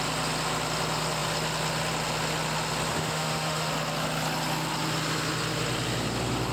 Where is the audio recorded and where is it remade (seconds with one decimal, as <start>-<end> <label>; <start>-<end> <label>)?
0.0-2.9 recorded; 2.9-3.7 remade; 3.7-6.5 recorded